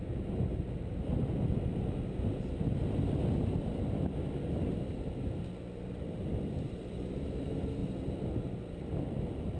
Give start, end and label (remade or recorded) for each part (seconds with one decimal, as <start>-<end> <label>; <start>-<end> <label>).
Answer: 0.0-0.5 remade; 0.5-4.4 recorded; 4.4-7.8 remade; 7.8-8.8 recorded; 8.8-9.6 remade